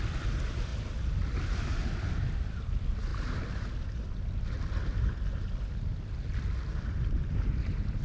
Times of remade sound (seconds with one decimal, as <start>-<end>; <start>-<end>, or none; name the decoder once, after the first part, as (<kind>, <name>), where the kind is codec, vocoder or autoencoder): none